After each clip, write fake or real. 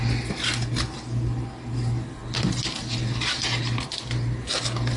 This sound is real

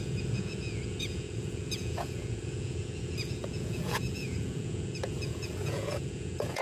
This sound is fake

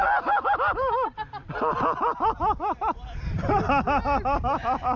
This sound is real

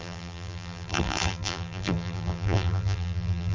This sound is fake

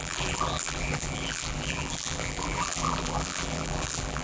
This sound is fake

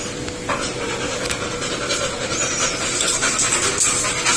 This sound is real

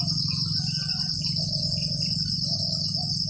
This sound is real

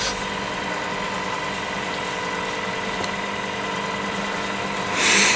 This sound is real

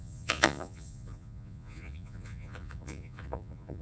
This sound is fake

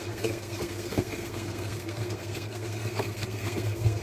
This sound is fake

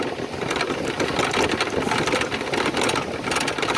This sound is real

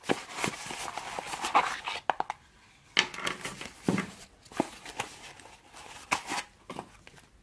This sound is real